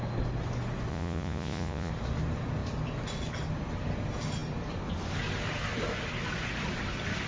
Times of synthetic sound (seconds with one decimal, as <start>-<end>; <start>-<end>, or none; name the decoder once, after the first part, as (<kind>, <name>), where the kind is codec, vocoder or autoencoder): 0.9-1.9 (vocoder, Vocos)